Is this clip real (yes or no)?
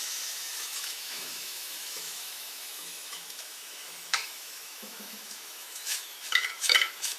no